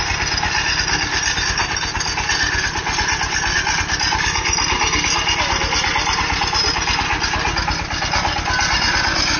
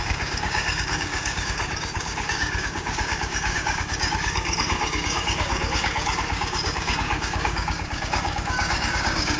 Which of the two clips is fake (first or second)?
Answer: second